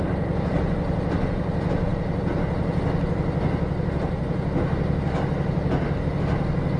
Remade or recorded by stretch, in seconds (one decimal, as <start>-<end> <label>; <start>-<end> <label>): 0.0-6.8 recorded

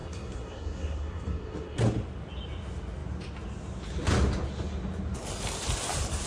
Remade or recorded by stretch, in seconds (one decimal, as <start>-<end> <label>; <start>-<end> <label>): 0.0-1.8 remade; 1.8-6.3 recorded

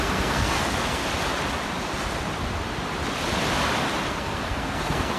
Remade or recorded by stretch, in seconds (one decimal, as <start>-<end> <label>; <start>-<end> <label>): 0.0-1.0 remade; 1.0-4.1 recorded; 4.1-5.2 remade